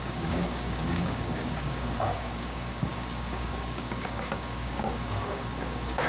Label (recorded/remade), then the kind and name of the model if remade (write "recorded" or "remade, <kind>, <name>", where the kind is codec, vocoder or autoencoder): remade, codec, DAC